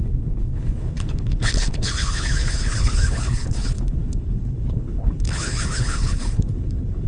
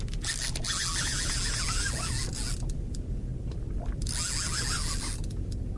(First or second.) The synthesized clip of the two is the first